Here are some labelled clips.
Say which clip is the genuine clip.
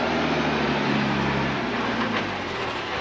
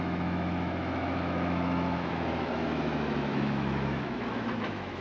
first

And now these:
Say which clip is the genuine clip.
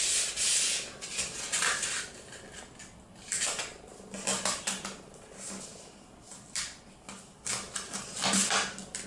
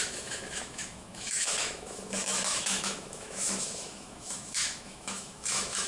first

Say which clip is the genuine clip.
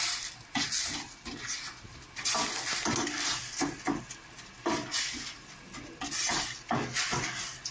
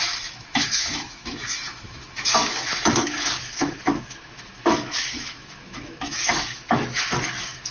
first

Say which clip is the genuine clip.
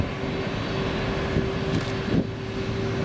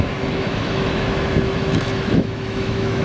first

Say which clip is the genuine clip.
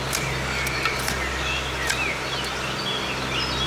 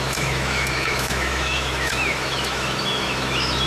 first